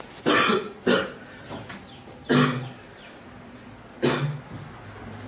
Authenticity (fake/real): real